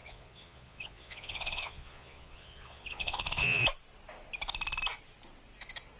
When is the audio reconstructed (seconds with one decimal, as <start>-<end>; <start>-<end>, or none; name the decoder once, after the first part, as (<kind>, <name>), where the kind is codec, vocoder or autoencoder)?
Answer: 0.0-3.6 (vocoder, Vocos)